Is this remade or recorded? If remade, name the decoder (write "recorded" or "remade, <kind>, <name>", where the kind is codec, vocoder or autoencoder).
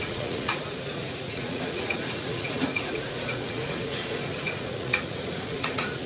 remade, vocoder, Vocos